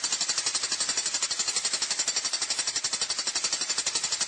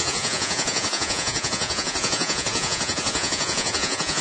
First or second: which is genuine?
first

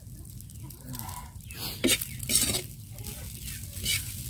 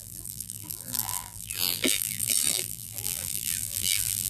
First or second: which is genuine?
first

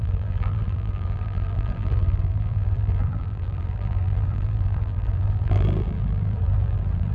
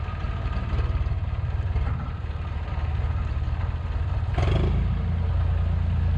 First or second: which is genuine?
second